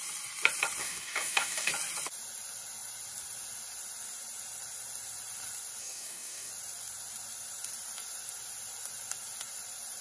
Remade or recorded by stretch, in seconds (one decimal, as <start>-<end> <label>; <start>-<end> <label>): 0.0-0.8 recorded; 0.8-1.7 remade; 1.7-5.8 recorded; 5.8-6.5 remade; 6.5-10.0 recorded